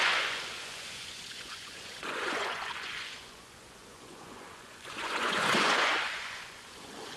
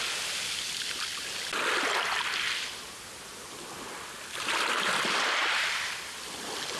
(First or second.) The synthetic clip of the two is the first